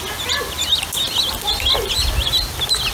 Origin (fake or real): real